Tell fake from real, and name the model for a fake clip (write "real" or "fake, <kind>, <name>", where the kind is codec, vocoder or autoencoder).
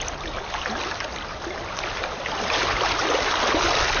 real